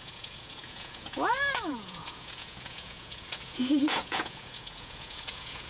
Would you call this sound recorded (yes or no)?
no